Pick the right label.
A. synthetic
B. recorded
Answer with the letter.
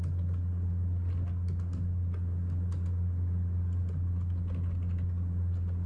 B